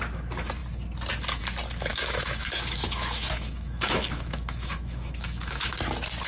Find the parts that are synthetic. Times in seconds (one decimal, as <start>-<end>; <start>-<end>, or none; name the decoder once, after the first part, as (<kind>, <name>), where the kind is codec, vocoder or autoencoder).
1.9-5.7 (autoencoder, DAC-VAE)